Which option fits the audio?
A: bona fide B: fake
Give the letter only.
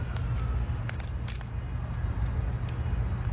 A